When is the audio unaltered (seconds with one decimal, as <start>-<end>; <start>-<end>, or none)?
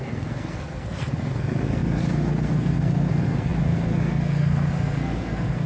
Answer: none